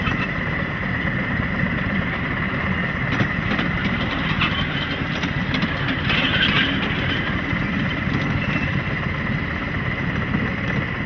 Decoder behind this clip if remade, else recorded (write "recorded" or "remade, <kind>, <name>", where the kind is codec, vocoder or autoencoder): recorded